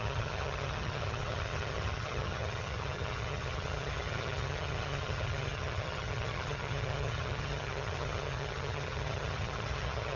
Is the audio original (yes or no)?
no